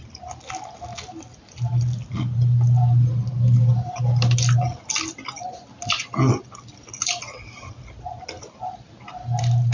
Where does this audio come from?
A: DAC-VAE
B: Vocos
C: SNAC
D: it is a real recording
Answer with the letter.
D